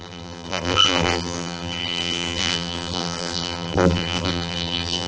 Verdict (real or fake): fake